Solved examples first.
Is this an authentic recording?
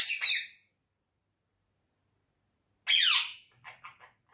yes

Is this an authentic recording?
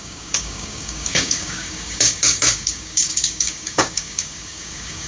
no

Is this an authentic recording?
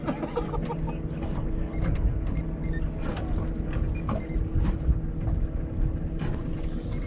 yes